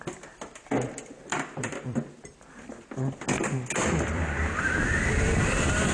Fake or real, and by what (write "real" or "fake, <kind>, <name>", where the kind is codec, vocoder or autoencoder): real